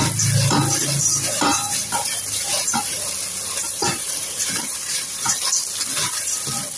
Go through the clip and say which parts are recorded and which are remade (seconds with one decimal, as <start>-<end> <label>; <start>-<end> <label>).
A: 0.0-1.1 recorded; 1.1-2.8 remade; 2.8-3.6 recorded; 3.6-5.4 remade; 5.4-6.8 recorded